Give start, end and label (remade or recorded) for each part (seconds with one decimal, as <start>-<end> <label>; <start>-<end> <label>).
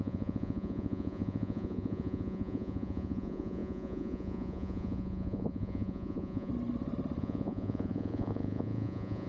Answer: 0.0-6.5 remade; 6.5-7.2 recorded; 7.2-9.3 remade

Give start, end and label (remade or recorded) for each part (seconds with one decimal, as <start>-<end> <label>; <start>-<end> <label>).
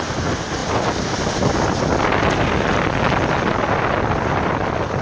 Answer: 0.0-5.0 recorded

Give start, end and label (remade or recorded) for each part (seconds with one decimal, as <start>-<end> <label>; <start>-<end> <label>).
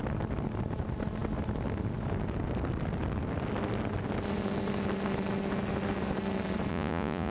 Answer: 0.0-6.7 recorded; 6.7-7.3 remade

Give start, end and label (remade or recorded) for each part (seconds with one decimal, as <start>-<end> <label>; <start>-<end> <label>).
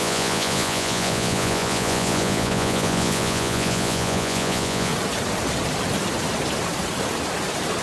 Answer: 0.0-4.9 remade; 4.9-7.8 recorded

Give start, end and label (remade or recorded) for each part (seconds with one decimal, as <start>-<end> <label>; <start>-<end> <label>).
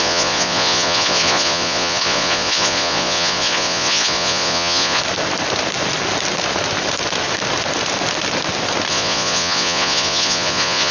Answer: 0.0-5.0 remade; 5.0-8.9 recorded; 8.9-10.9 remade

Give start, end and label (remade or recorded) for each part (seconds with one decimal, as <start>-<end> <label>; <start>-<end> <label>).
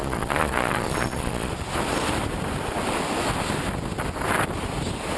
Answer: 0.0-1.5 remade; 1.5-5.2 recorded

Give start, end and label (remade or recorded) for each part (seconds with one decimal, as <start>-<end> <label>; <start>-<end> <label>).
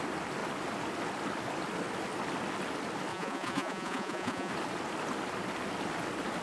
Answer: 0.0-3.1 recorded; 3.1-4.5 remade; 4.5-6.4 recorded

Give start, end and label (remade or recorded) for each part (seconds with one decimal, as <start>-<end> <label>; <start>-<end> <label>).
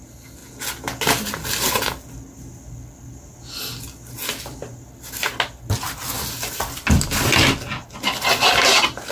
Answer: 0.0-9.1 recorded